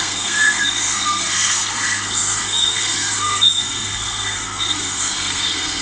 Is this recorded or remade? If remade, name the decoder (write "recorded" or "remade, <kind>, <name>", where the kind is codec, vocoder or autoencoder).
remade, codec, SNAC